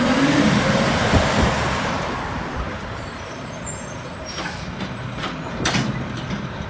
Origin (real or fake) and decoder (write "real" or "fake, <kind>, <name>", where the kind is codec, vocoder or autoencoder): fake, vocoder, BigVGAN v2